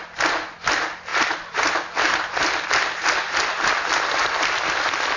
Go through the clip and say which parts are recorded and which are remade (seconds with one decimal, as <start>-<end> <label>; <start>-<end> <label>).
0.0-5.2 recorded